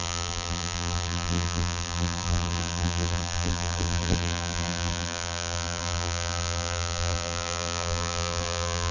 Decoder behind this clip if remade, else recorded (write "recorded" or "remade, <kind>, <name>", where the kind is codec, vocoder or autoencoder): remade, vocoder, BigVGAN v2